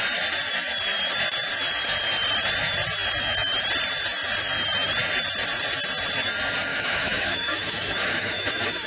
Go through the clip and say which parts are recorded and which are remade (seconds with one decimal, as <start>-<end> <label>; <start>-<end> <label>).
0.0-6.7 recorded; 6.7-8.9 remade